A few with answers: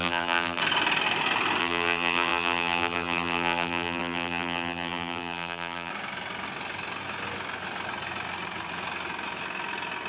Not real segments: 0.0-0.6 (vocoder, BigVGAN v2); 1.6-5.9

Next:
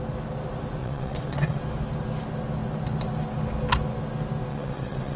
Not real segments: 0.8-1.6 (vocoder, WaveNeXt); 4.5-5.2

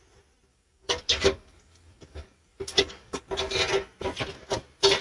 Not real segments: 0.5-3.5 (codec, DAC)